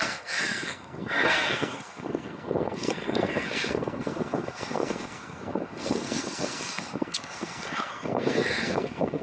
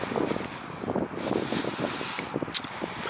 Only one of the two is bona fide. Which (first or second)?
second